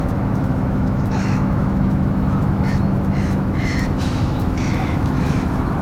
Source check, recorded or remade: remade